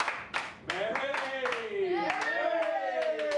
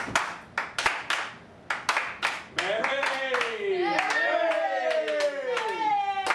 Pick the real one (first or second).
second